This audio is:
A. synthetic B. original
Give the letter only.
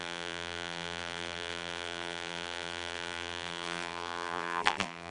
A